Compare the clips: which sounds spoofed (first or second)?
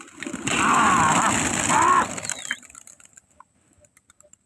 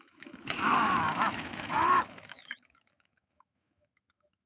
second